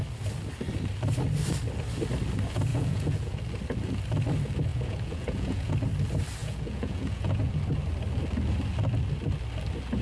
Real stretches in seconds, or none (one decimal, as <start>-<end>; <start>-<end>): 0.0-2.7; 3.4-4.7; 5.7-6.4; 7.5-10.0